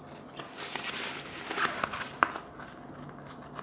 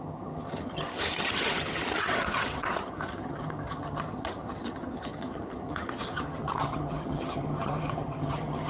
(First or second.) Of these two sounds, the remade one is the second